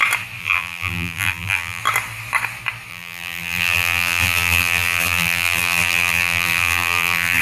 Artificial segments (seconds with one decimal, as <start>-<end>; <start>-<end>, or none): 0.4-1.8; 2.9-7.4